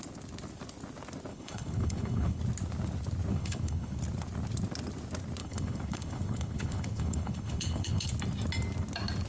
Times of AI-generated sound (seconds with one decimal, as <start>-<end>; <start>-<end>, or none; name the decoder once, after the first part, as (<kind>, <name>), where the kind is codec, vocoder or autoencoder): 1.3-2.4 (codec, HILCodec); 3.3-4.0; 5.4-8.1